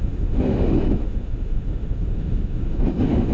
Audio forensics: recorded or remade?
remade